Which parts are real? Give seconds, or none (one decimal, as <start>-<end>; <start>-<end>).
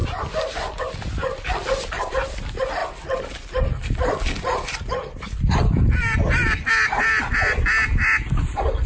0.0-2.8; 6.7-8.9